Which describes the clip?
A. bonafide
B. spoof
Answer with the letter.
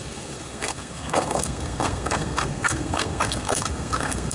B